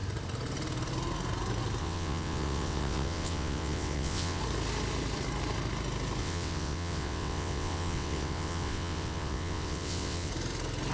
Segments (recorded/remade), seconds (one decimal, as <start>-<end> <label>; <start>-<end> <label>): 0.0-1.8 recorded; 1.8-4.4 remade; 4.4-6.2 recorded; 6.2-10.3 remade; 10.3-10.9 recorded